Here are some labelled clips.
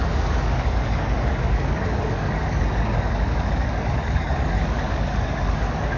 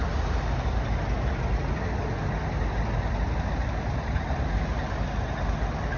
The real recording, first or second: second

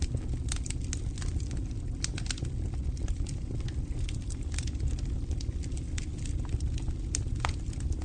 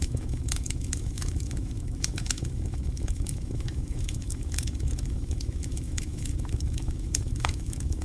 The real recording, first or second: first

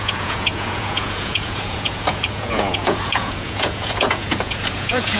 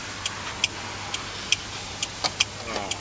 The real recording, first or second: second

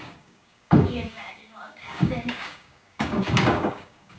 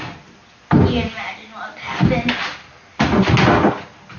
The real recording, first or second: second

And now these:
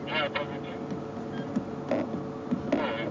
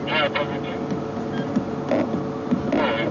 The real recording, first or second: first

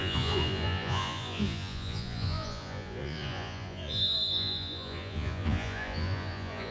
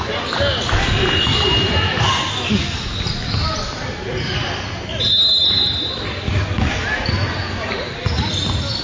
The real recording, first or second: second